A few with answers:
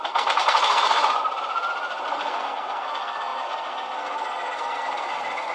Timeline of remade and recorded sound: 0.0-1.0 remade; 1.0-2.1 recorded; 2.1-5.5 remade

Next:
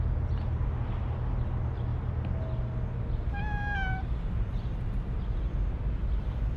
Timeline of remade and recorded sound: 0.0-6.6 recorded

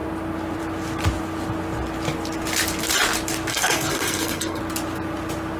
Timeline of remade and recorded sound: 0.0-3.5 recorded; 3.5-4.6 remade; 4.6-5.6 recorded

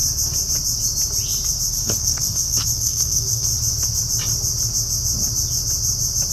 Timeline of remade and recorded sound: 0.0-1.7 recorded; 1.7-3.5 remade; 3.5-6.3 recorded

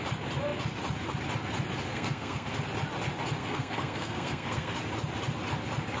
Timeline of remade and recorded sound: 0.0-1.9 recorded; 1.9-2.6 remade; 2.6-3.4 recorded; 3.4-4.8 remade; 4.8-6.0 recorded